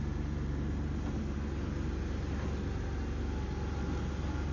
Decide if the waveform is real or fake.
real